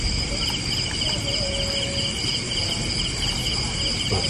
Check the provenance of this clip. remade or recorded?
recorded